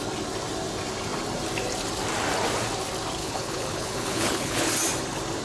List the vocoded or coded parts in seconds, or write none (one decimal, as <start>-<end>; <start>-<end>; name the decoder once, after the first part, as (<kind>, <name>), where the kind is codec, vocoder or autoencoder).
3.2-4.7 (codec, HILCodec)